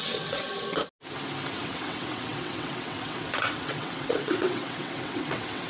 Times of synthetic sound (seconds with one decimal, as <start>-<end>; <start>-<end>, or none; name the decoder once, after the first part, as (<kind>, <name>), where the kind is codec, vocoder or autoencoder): 0.0-0.5 (vocoder, WaveNeXt); 1.6-5.7